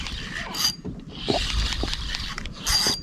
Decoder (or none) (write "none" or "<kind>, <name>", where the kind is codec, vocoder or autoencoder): none